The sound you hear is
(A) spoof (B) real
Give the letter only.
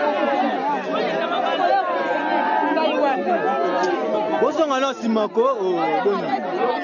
B